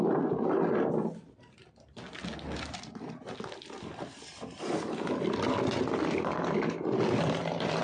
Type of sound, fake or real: real